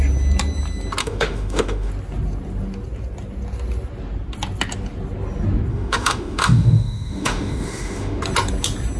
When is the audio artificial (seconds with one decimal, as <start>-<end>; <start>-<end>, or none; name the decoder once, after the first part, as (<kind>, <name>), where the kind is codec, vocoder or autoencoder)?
1.0-1.9 (autoencoder, DAC-VAE); 5.7-8.2